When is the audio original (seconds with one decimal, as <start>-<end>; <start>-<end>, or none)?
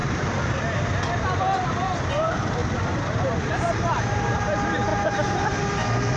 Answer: 2.6-3.2